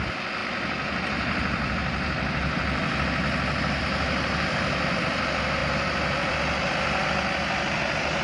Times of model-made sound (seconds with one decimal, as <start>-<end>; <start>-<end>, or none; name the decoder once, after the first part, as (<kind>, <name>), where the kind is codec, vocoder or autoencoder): none